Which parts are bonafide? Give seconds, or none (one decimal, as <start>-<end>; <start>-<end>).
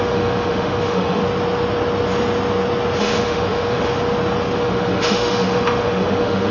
1.2-3.0; 3.9-4.6